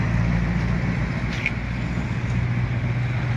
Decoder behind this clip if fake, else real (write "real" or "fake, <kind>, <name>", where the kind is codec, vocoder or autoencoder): real